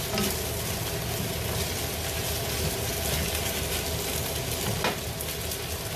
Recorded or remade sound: recorded